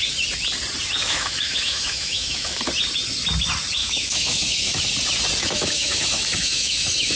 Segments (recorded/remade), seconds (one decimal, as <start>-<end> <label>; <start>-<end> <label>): 0.0-1.0 recorded; 1.0-2.6 remade; 2.6-3.8 recorded; 3.8-4.8 remade; 4.8-5.4 recorded; 5.4-7.2 remade